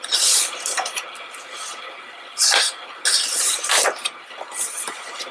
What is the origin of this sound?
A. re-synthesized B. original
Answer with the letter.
B